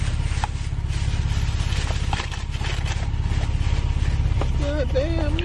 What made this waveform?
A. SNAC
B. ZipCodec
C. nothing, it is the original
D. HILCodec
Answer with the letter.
C